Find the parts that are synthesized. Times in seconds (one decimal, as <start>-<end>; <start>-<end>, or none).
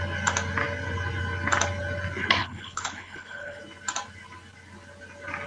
2.4-3.6